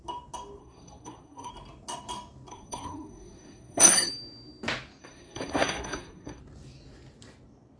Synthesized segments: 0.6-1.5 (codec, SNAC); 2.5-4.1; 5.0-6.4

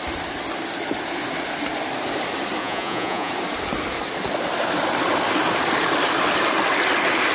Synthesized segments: 2.6-3.3 (vocoder, Vocos)

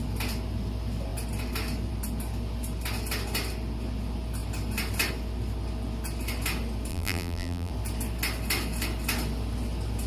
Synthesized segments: 6.9-7.7 (vocoder, BigVGAN v2)

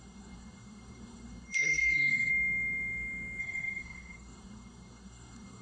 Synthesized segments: 0.0-2.3 (codec, SNAC); 3.4-5.6

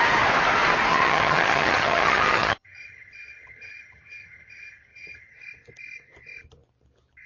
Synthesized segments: 0.9-5.3 (vocoder, HiFi-GAN)